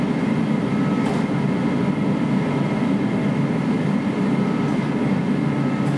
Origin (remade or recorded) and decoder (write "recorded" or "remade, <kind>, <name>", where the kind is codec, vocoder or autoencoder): recorded